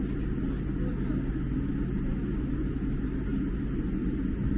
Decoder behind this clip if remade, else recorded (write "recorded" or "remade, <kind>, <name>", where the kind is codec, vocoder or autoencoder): recorded